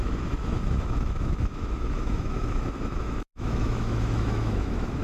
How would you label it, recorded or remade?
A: remade